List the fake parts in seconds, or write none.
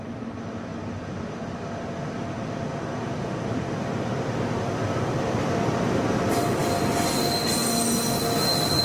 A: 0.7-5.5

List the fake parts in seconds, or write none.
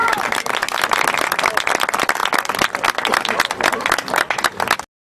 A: 0.0-0.8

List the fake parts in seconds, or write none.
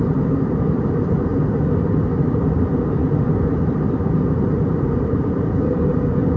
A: 0.0-1.3; 2.2-3.0; 3.6-6.4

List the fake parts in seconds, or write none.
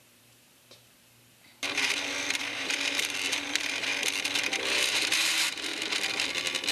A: 0.0-3.9; 4.7-5.7